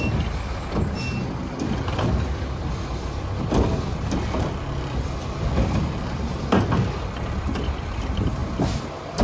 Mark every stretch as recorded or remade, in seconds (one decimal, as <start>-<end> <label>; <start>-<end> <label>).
0.0-9.2 recorded

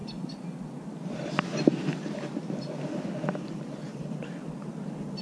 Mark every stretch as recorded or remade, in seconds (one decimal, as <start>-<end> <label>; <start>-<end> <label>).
0.0-5.2 recorded

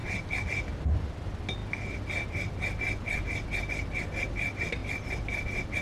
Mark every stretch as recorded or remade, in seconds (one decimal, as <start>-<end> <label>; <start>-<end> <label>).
0.0-5.8 recorded

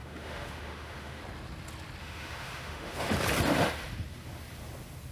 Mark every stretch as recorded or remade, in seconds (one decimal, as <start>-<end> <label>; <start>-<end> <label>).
0.0-1.2 remade; 1.2-2.0 recorded; 2.0-3.1 remade; 3.1-5.1 recorded

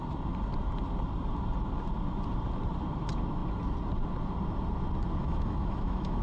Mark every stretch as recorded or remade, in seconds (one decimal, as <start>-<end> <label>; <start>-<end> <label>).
0.0-5.2 recorded; 5.2-6.2 remade

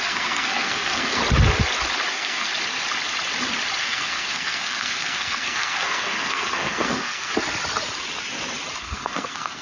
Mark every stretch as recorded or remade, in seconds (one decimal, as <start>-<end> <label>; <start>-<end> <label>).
0.0-1.2 remade; 1.2-2.1 recorded; 2.1-2.5 remade; 2.5-3.8 recorded; 3.8-7.3 remade; 7.3-8.8 recorded; 8.8-9.6 remade

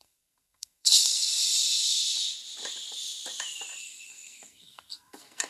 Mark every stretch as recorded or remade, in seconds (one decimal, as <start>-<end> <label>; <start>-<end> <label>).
0.0-1.3 remade; 1.3-3.8 recorded; 3.8-5.5 remade

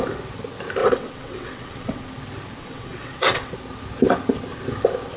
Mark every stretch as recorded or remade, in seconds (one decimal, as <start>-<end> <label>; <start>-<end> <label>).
0.0-0.8 recorded; 0.8-2.1 remade; 2.1-2.6 recorded; 2.6-3.5 remade; 3.5-5.2 recorded